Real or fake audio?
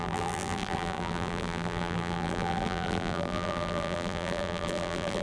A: fake